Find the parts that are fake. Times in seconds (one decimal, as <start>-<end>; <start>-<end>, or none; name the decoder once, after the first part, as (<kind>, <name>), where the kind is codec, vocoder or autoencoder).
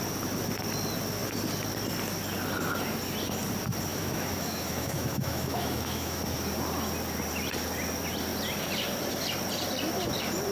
3.9-6.2 (autoencoder, DAC-VAE)